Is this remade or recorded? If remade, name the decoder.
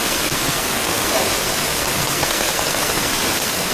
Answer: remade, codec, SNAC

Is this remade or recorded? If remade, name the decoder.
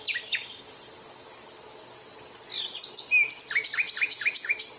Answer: recorded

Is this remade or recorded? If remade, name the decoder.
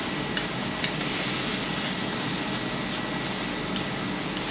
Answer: recorded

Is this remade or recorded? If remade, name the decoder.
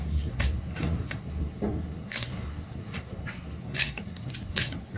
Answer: remade, codec, SNAC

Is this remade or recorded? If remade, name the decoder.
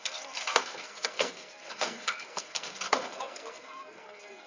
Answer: remade, codec, SNAC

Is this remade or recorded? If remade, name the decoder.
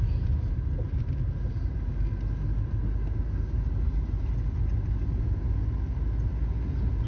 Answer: recorded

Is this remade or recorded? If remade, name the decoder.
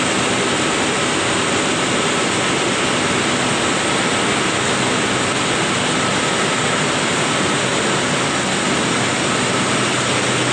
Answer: recorded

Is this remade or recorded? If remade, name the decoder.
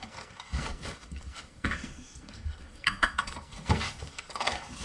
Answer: remade, codec, SNAC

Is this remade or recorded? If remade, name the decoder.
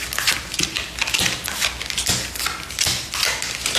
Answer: recorded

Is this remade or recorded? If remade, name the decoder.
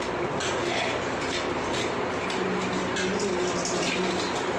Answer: recorded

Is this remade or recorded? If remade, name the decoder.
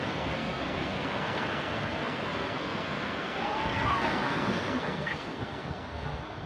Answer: remade, codec, SNAC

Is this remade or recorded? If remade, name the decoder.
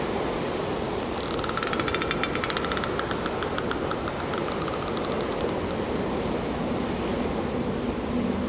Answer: recorded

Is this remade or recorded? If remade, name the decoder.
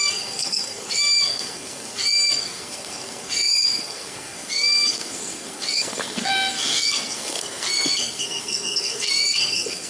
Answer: remade, codec, SNAC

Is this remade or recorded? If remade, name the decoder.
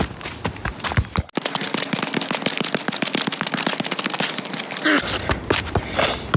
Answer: recorded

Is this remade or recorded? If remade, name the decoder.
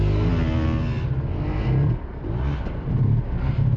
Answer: recorded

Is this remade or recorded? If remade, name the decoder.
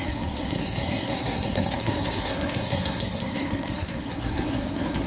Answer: remade, codec, SNAC